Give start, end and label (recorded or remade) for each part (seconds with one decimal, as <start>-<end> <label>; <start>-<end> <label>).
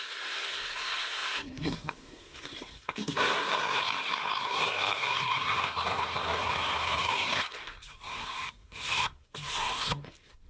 0.0-10.5 remade